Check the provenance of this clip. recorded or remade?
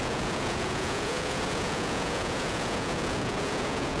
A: remade